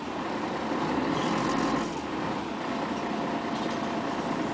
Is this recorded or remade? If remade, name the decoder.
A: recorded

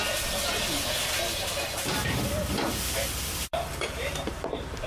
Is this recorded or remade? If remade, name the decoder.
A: remade, vocoder, BigVGAN v2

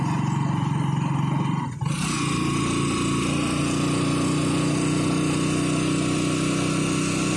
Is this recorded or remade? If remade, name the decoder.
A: recorded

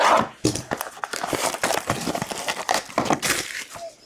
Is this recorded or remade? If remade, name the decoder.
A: remade, vocoder, BigVGAN v2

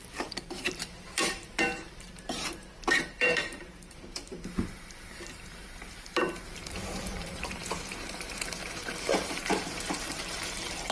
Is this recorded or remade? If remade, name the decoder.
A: remade, vocoder, BigVGAN v2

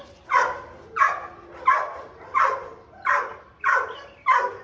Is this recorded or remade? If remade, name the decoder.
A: recorded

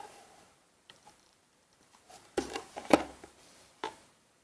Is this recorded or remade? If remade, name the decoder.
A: remade, vocoder, BigVGAN v2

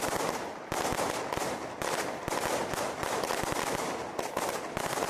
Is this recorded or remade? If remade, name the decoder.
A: recorded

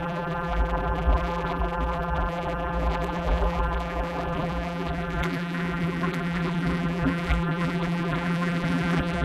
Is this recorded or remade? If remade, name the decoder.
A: remade, vocoder, BigVGAN v2